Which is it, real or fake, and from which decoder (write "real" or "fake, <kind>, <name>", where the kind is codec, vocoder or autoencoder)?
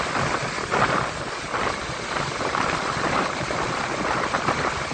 real